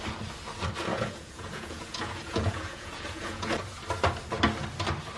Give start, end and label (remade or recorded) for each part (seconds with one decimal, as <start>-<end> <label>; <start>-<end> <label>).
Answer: 0.0-0.9 recorded; 0.9-3.5 remade; 3.5-5.2 recorded